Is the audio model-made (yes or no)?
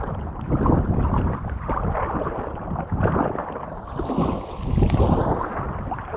no